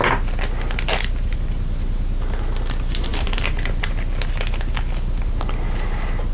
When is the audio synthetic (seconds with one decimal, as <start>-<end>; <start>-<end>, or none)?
none

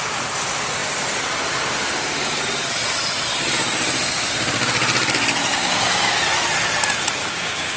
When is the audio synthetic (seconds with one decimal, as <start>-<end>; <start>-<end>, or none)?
5.5-6.2; 7.2-7.8

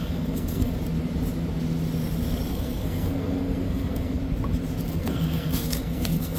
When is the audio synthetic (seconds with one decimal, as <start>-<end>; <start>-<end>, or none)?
0.0-0.7; 2.5-4.2; 4.9-6.4

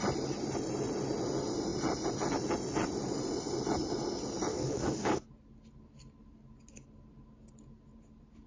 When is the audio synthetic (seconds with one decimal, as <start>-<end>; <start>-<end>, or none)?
4.5-5.3

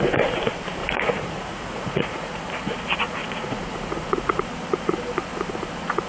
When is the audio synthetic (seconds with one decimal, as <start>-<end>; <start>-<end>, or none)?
0.8-2.4; 3.2-4.4

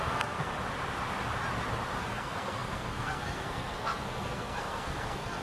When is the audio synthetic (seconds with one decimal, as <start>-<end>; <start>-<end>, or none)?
0.0-0.5; 2.0-5.4

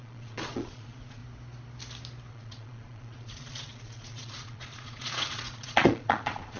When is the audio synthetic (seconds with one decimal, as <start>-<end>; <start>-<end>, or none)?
0.0-1.2; 2.3-6.6

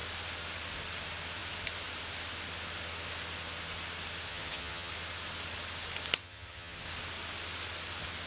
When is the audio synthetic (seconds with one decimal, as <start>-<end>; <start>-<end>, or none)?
4.3-4.9; 6.2-6.8